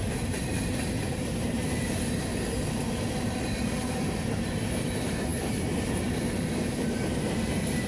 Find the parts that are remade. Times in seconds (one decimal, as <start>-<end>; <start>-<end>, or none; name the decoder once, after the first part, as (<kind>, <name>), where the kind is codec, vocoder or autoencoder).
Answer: 0.0-7.9 (vocoder, BigVGAN v2)